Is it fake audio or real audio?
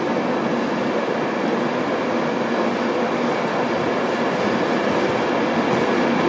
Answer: real